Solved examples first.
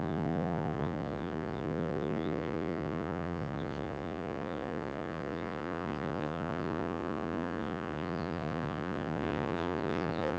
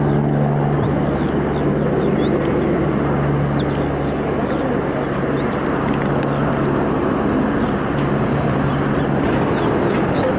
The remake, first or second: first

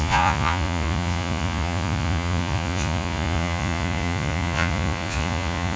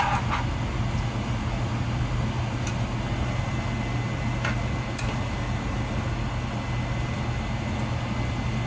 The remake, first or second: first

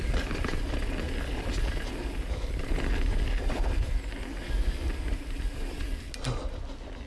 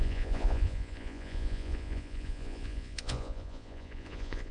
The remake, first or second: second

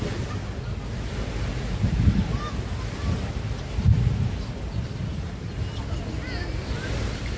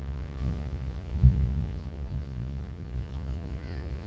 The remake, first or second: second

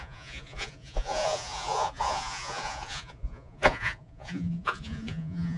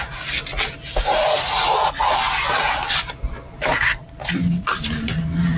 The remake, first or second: first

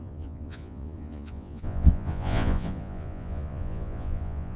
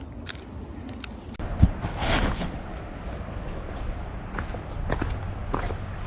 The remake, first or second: first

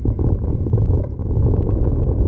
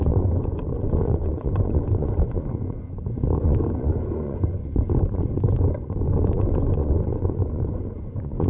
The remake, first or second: second